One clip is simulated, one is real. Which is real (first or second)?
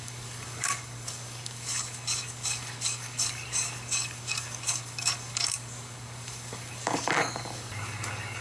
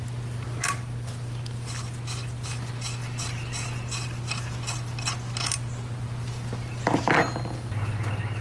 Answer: second